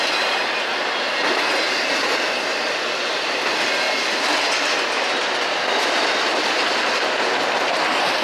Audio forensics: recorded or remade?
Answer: recorded